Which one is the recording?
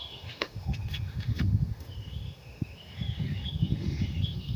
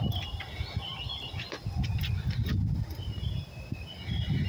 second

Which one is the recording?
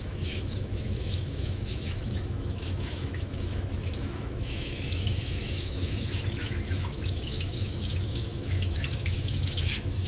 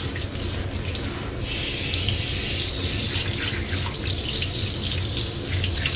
second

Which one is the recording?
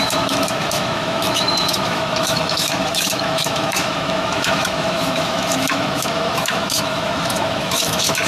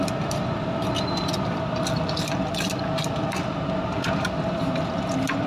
second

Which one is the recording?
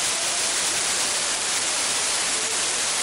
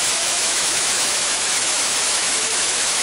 first